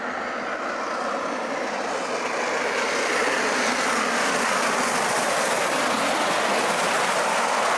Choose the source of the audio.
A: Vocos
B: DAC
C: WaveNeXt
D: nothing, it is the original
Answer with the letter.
D